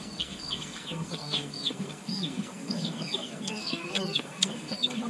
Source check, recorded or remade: remade